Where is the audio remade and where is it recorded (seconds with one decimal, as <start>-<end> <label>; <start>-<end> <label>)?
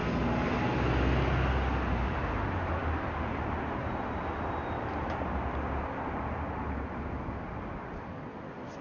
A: 0.0-8.8 recorded